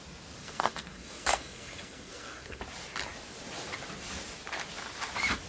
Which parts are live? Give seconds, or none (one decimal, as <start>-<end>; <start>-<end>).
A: 0.0-0.4; 2.6-5.5